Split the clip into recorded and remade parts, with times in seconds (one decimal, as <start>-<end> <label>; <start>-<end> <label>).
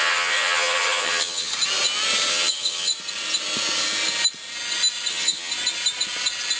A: 0.0-1.5 remade; 1.5-2.3 recorded; 2.3-2.9 remade; 2.9-5.1 recorded; 5.1-5.5 remade; 5.5-6.6 recorded